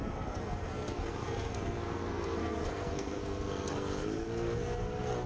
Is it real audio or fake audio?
fake